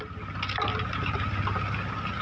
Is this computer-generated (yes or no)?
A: no